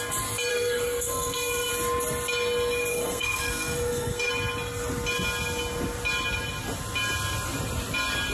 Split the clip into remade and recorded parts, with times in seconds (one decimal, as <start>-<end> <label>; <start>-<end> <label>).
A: 0.0-0.5 recorded; 0.5-1.7 remade; 1.7-2.9 recorded; 2.9-4.3 remade; 4.3-8.3 recorded